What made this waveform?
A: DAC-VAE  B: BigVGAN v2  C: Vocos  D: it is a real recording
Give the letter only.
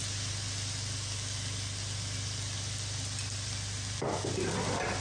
D